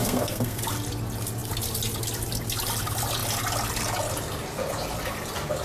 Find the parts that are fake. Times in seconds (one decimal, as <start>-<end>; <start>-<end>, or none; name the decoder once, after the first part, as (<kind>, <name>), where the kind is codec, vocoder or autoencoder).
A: 0.0-0.6 (codec, SNAC)